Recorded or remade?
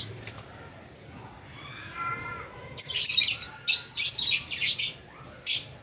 recorded